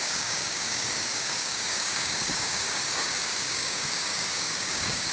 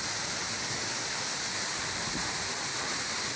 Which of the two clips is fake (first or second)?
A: first